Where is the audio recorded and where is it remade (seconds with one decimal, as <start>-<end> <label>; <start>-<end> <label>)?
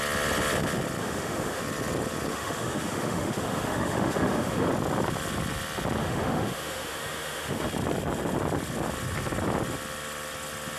0.0-1.0 recorded; 1.0-1.6 remade; 1.6-2.3 recorded; 2.3-4.7 remade; 4.7-6.0 recorded; 6.0-7.7 remade; 7.7-10.8 recorded